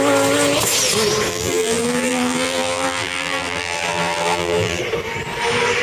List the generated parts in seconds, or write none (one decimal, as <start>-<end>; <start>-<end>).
1.3-4.8

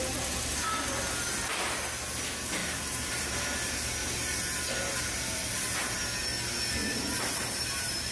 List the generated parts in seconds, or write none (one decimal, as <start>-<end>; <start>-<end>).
2.6-3.3; 4.0-4.6; 6.8-8.1